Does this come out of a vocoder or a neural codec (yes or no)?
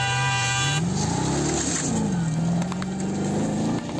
no